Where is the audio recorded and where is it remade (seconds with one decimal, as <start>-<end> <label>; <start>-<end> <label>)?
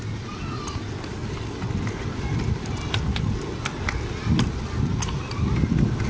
0.0-6.1 recorded